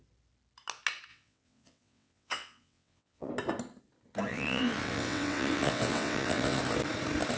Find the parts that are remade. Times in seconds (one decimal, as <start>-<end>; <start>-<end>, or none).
1.1-3.3; 4.3-6.6